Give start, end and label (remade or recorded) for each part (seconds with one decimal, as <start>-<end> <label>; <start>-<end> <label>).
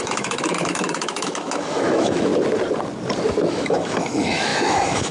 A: 0.0-2.3 remade; 2.3-3.5 recorded; 3.5-5.1 remade